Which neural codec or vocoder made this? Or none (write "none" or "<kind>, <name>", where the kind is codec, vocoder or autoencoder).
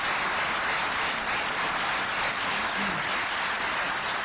none